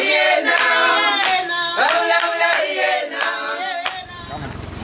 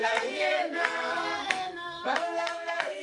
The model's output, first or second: second